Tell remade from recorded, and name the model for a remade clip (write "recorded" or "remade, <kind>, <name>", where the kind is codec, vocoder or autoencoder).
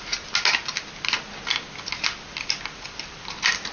recorded